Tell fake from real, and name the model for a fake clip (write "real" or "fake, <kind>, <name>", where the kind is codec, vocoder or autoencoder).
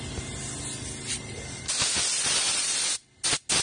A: real